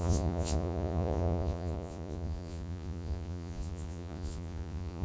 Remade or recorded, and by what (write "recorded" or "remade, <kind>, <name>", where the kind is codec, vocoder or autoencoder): remade, vocoder, Vocos